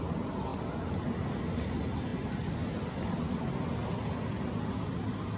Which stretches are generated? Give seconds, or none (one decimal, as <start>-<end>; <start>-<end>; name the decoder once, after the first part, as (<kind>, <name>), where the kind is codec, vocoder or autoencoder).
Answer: none